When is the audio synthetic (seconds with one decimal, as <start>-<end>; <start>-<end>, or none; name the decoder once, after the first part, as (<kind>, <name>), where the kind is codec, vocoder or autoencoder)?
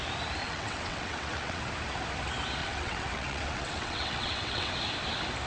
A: 0.4-1.6 (vocoder, WaveNeXt); 2.6-4.7